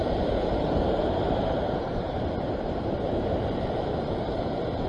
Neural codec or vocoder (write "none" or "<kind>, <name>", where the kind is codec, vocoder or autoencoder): vocoder, BigVGAN v2